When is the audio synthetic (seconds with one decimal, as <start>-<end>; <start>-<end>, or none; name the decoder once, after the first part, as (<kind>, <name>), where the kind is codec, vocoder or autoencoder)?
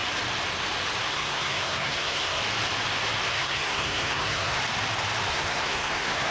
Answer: 1.1-2.4 (codec, SNAC); 3.3-4.6; 5.3-6.3